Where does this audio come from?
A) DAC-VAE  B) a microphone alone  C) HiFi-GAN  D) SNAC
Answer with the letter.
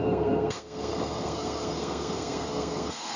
D